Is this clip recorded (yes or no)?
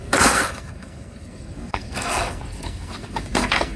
no